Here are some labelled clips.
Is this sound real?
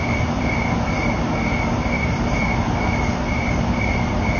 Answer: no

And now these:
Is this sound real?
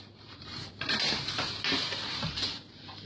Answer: no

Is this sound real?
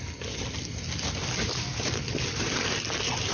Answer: yes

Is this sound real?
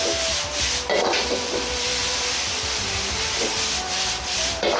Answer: yes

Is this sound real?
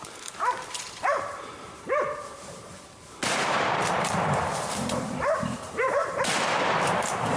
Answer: no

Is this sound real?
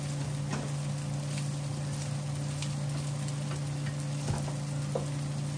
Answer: yes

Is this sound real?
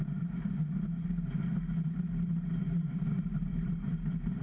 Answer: no